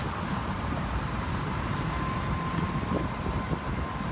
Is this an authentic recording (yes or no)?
no